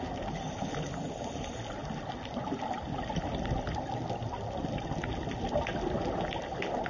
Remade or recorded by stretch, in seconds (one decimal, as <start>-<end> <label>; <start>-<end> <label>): 0.0-6.9 recorded

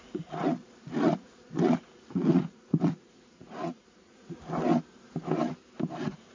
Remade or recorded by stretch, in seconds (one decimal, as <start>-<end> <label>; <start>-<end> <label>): 0.0-0.6 recorded; 0.6-4.4 remade; 4.4-6.3 recorded

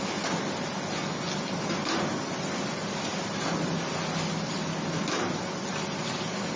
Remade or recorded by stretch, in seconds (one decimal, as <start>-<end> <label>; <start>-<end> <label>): 0.0-6.6 recorded

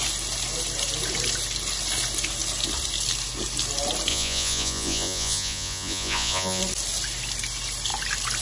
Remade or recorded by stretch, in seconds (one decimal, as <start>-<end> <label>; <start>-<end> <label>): 0.0-4.1 recorded; 4.1-6.6 remade; 6.6-8.4 recorded

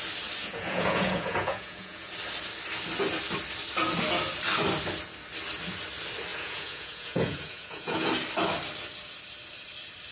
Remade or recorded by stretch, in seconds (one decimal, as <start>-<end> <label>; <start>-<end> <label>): 0.0-0.4 recorded; 0.4-2.1 remade; 2.1-6.3 recorded; 6.3-8.1 remade; 8.1-10.1 recorded

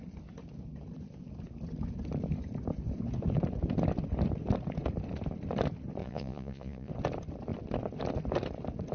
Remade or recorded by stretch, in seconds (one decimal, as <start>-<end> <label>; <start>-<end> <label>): 0.0-6.0 recorded; 6.0-6.9 remade; 6.9-8.9 recorded